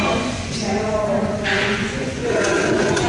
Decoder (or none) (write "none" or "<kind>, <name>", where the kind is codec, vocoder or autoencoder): vocoder, Vocos